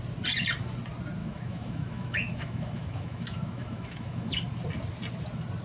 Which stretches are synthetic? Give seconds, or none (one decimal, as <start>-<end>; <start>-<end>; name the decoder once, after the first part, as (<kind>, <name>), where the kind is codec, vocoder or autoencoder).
1.2-4.3 (autoencoder, DAC-VAE)